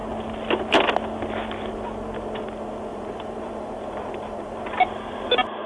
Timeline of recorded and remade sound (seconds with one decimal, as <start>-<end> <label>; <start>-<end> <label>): 0.0-2.9 recorded; 2.9-4.6 remade; 4.6-5.7 recorded